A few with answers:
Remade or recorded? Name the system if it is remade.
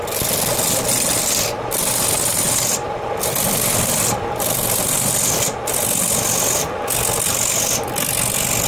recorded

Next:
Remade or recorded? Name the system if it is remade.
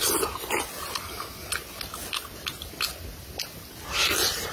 recorded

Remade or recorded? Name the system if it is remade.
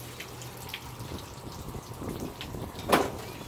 recorded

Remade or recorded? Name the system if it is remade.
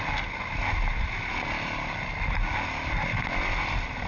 recorded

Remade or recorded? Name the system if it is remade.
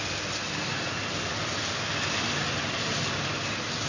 recorded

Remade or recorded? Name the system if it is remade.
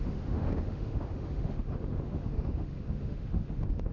remade, autoencoder, DAC-VAE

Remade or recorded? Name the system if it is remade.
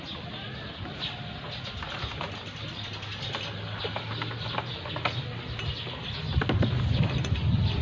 recorded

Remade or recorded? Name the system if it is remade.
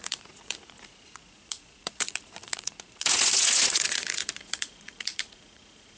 remade, vocoder, Vocos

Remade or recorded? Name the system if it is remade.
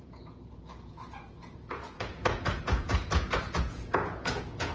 remade, vocoder, Vocos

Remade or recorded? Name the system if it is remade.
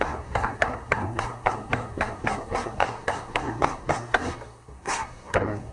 remade, codec, SNAC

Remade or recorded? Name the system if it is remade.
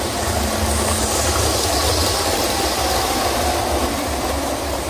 recorded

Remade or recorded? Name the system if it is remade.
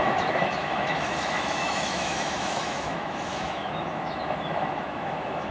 remade, autoencoder, DAC-VAE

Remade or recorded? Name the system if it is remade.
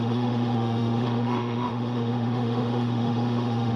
remade, autoencoder, DAC-VAE